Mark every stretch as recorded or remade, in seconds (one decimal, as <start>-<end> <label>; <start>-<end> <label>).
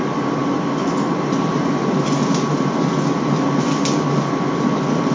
0.0-5.1 recorded